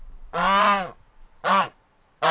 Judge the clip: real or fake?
real